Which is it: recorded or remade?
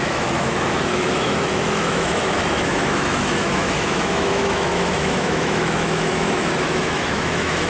remade